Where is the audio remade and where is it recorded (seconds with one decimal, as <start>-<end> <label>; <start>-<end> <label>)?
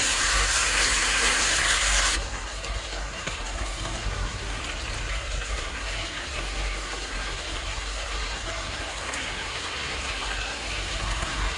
0.0-4.6 remade; 4.6-5.1 recorded; 5.1-11.6 remade